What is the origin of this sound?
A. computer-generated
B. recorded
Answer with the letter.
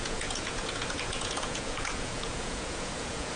A